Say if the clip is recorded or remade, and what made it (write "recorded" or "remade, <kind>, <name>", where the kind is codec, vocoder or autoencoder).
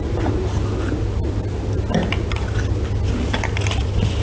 recorded